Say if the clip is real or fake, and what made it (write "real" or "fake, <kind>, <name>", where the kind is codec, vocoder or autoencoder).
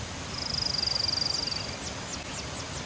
real